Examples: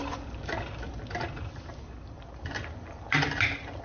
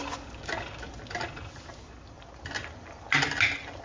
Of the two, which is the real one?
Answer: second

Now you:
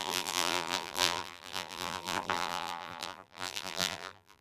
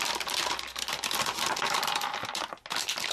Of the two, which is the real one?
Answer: second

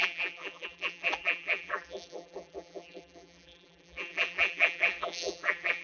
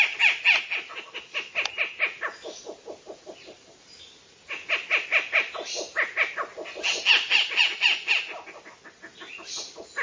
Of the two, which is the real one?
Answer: second